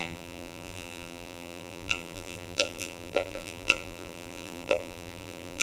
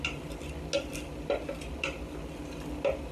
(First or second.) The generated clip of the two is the first